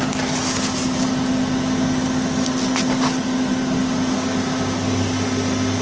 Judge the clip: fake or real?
real